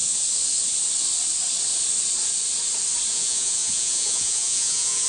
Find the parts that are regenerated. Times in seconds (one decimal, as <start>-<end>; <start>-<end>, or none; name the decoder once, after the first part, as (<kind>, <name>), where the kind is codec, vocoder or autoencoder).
3.1-5.1 (vocoder, Vocos)